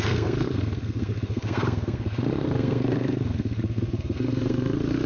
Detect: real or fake fake